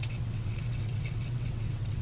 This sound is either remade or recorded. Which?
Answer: remade